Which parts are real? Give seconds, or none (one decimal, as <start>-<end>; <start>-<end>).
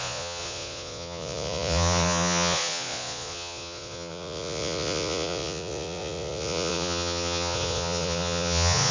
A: none